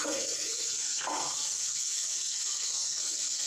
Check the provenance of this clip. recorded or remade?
remade